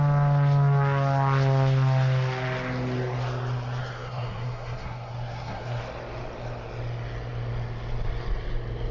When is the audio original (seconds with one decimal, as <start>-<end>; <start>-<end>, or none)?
0.0-3.8; 5.8-8.9